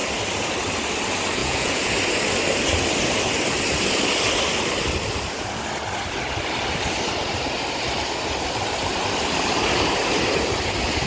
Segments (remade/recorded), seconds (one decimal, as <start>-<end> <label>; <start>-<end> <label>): 0.0-1.4 recorded; 1.4-1.9 remade; 1.9-11.1 recorded